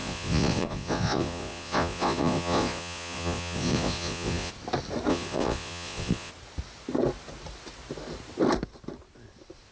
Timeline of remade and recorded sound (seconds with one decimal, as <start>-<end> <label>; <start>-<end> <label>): 0.0-4.5 remade; 4.5-5.1 recorded; 5.1-6.3 remade; 6.3-9.7 recorded